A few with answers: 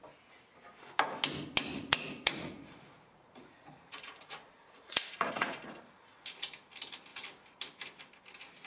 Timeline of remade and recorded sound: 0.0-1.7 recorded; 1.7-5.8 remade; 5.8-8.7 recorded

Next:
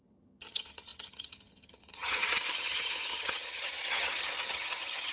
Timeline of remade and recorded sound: 0.0-5.1 remade

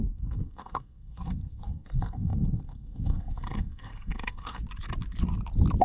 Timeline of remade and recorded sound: 0.0-4.6 remade; 4.6-5.8 recorded

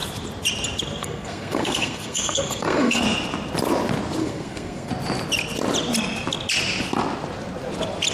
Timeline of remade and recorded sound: 0.0-1.0 recorded; 1.0-3.0 remade; 3.0-4.2 recorded; 4.2-4.9 remade; 4.9-8.1 recorded

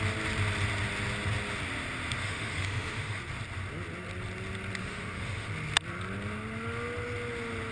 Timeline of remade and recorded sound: 0.0-2.2 recorded; 2.2-3.2 remade; 3.2-4.8 recorded; 4.8-5.5 remade; 5.5-7.7 recorded

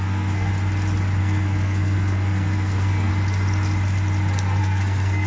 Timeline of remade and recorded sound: 0.0-0.5 remade; 0.5-1.2 recorded; 1.2-3.1 remade; 3.1-4.6 recorded; 4.6-5.3 remade